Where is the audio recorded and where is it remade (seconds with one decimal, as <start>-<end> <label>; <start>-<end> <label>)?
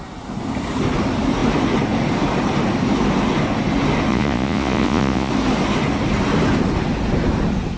0.0-4.1 recorded; 4.1-5.3 remade; 5.3-7.8 recorded